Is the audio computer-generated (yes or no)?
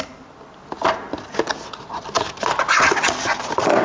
no